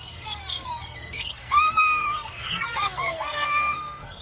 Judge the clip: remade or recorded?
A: remade